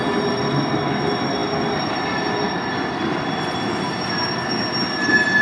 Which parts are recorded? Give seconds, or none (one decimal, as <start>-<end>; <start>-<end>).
0.0-5.4